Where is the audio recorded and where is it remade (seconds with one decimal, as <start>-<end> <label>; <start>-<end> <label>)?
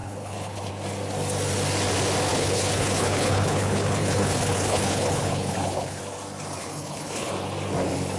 0.0-0.7 remade; 0.7-2.3 recorded; 2.3-6.0 remade; 6.0-6.6 recorded; 6.6-7.3 remade; 7.3-8.2 recorded